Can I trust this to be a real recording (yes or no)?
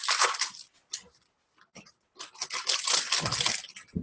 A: yes